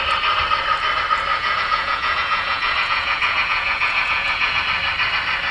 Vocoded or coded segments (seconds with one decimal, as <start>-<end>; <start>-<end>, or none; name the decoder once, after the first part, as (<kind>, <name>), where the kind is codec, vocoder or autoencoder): 1.3-4.6 (vocoder, Vocos)